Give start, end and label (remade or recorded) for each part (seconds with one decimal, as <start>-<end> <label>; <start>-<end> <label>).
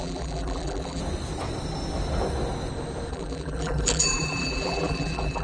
0.0-1.0 remade; 1.0-3.1 recorded; 3.1-5.4 remade